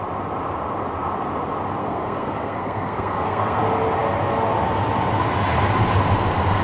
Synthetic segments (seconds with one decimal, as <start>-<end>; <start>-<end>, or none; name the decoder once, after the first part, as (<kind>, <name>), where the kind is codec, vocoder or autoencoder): 1.8-3.6 (codec, SNAC)